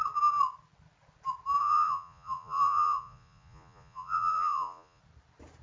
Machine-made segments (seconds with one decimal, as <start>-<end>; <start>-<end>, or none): 1.6-5.0

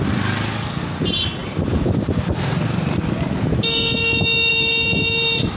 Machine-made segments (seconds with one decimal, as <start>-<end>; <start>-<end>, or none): 1.4-2.1; 4.5-5.6

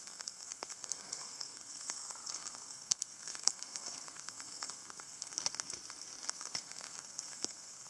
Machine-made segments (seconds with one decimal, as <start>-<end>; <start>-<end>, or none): 0.0-5.3; 6.3-7.9

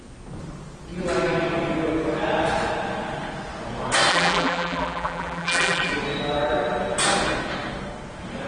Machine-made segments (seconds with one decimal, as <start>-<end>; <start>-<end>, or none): 4.1-5.9